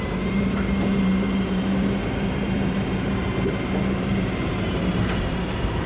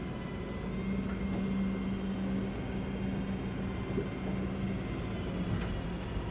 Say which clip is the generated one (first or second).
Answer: first